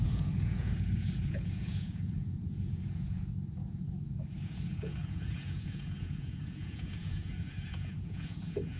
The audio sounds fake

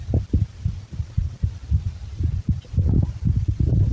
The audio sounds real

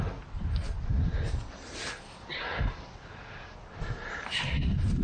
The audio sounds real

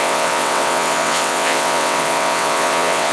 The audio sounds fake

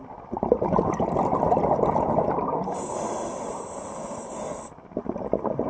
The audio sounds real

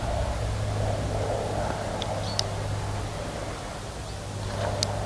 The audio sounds real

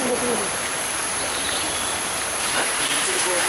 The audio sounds fake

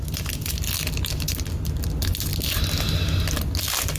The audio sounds real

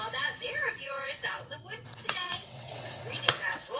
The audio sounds fake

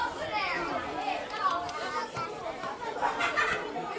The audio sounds real